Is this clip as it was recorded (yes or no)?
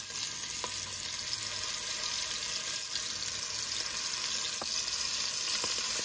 yes